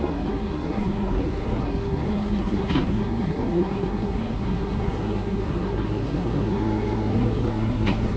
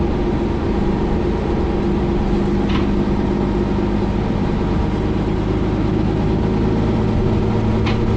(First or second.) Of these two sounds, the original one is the second